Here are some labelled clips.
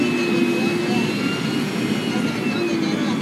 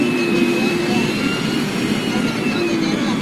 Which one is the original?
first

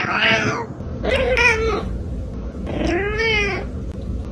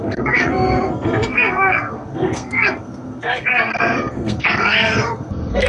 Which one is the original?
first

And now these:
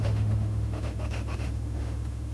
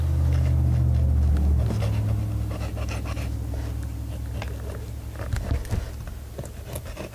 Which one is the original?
second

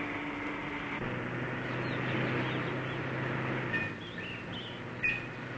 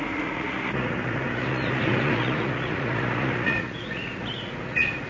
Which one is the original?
first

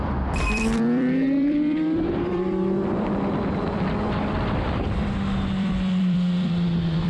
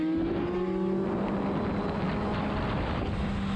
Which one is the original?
second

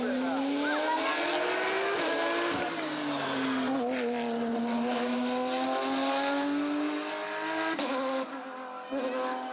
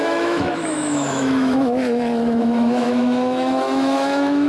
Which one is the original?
first